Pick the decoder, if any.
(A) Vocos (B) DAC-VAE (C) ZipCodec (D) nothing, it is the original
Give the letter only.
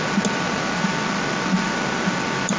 D